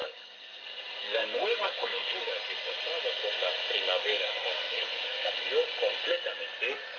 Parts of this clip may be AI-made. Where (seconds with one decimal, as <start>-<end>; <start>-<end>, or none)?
0.0-0.6; 1.0-2.3; 4.0-5.3

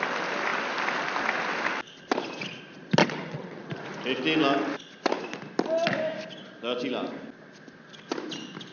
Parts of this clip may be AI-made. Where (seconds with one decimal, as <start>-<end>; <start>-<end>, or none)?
3.0-3.7